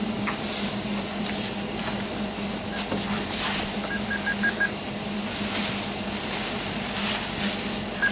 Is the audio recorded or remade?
recorded